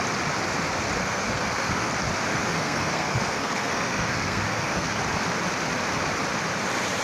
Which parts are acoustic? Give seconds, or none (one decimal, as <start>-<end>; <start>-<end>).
0.0-1.0; 1.9-2.3; 5.0-7.0